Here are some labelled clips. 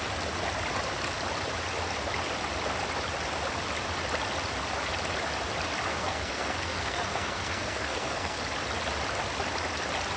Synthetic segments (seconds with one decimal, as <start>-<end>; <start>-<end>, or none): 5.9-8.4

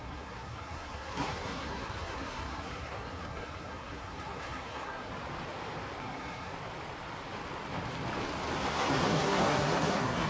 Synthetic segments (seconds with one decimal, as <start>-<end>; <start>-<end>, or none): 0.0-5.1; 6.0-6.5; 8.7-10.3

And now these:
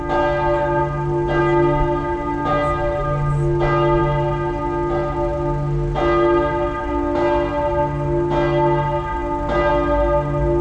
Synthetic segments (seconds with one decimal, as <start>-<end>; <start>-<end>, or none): none

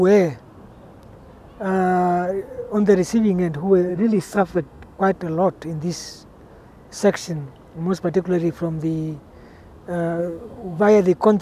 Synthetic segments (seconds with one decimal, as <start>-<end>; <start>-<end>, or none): 3.9-5.0; 10.2-10.8

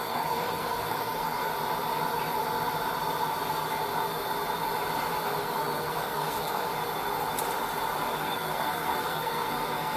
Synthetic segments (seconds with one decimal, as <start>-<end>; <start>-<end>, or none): 0.0-1.5; 5.4-6.7; 8.2-10.0